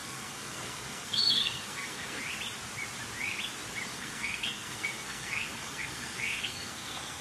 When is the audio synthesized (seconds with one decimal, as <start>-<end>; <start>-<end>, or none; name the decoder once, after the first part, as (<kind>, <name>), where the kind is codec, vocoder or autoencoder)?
0.0-2.2 (codec, SNAC); 3.9-7.2